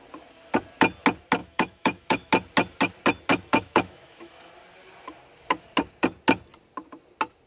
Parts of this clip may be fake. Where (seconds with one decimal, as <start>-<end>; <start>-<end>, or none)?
1.4-2.3; 3.3-4.5